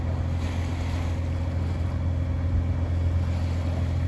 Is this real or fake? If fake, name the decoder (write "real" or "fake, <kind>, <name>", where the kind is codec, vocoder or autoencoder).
real